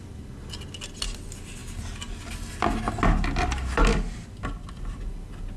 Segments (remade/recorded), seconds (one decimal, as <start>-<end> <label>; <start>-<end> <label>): 0.0-5.6 recorded